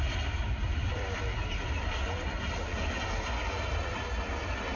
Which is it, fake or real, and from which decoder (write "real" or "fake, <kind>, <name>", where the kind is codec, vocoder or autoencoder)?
real